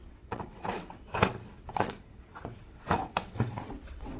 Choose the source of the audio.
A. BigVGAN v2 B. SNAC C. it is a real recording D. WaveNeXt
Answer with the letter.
D